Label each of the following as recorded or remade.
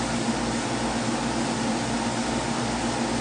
recorded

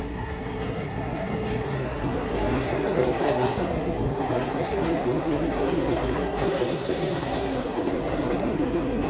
remade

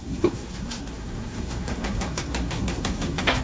remade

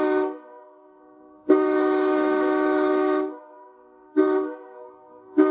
remade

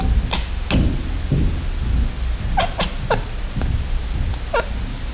recorded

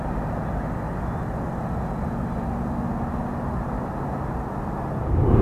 recorded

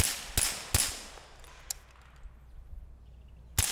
recorded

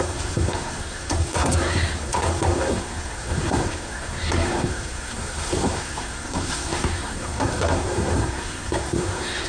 remade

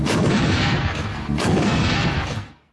remade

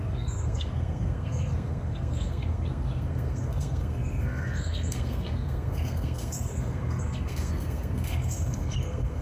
remade